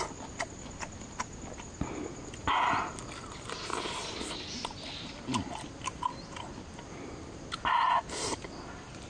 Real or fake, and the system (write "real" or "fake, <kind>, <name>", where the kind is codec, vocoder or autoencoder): real